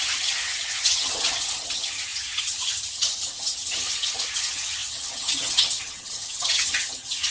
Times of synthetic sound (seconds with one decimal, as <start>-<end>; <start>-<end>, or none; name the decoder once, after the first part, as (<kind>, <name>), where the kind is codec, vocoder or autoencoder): 0.0-7.3 (vocoder, HiFi-GAN)